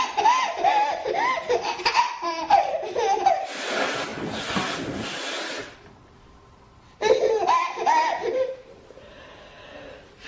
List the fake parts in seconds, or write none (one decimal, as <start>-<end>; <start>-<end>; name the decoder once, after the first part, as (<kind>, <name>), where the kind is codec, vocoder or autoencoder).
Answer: 8.2-8.9 (vocoder, BigVGAN v2)